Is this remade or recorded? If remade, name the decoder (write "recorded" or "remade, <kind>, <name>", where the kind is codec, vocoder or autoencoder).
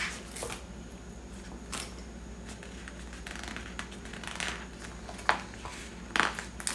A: recorded